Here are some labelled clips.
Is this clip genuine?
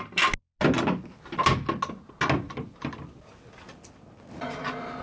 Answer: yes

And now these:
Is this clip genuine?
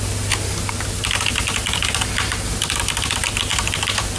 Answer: yes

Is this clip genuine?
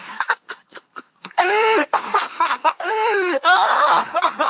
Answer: no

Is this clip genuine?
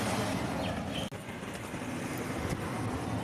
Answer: yes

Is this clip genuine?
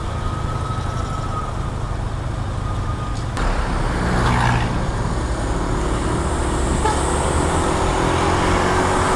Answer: yes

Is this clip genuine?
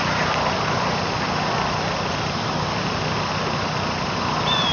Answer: yes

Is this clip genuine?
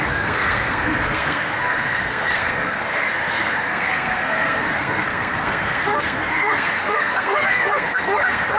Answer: no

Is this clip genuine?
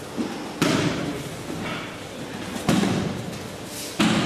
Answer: yes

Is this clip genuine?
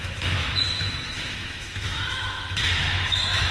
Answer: no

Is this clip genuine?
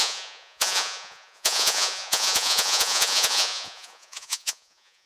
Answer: no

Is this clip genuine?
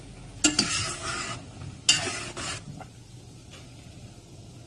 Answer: yes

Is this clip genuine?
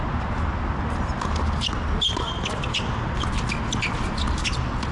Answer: yes